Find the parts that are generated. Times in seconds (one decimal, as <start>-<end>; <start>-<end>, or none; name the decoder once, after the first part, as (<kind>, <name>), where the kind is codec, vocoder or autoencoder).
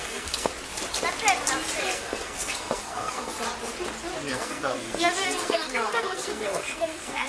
0.0-0.5 (codec, SNAC); 1.8-3.3; 4.3-7.3